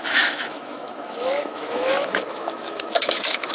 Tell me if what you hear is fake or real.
fake